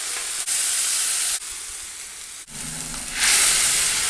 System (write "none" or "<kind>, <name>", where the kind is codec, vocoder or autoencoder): none